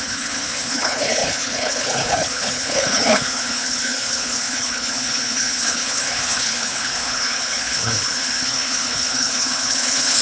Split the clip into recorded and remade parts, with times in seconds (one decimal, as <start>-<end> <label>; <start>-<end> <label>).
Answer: 0.0-10.2 remade